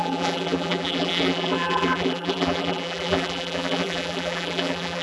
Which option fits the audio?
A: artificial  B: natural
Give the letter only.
A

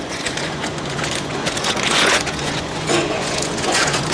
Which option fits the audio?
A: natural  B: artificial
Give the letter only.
B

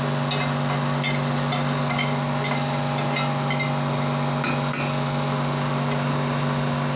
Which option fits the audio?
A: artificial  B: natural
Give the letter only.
B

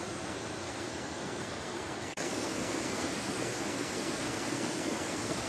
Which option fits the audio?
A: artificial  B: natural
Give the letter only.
A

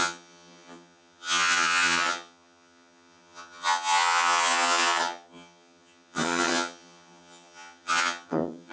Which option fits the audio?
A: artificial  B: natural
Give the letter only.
A